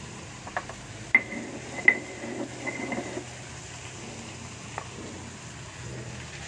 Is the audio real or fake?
real